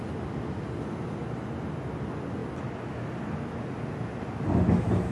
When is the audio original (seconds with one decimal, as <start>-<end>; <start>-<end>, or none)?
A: 0.0-5.1